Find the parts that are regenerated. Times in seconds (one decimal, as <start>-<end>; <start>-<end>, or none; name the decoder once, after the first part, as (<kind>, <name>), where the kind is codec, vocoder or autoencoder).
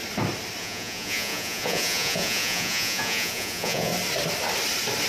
0.6-3.9 (vocoder, Vocos)